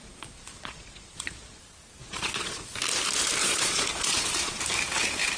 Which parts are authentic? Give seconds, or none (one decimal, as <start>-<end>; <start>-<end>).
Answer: 1.6-2.0; 2.7-3.4; 4.6-5.4